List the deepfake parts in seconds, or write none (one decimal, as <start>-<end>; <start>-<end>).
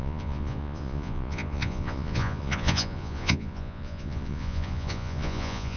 0.0-5.8